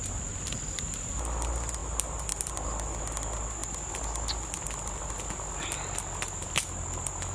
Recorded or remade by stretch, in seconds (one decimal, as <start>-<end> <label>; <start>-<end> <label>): 0.0-7.3 recorded